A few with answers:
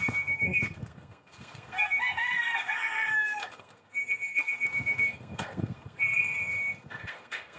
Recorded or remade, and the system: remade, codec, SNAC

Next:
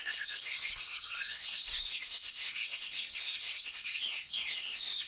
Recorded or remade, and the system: remade, codec, SNAC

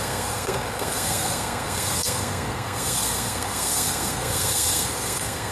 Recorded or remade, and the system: remade, codec, SNAC